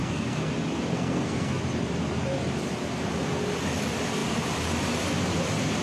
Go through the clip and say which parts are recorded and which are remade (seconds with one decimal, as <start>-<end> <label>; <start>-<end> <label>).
0.0-0.5 remade; 0.5-0.9 recorded; 0.9-1.6 remade; 1.6-5.8 recorded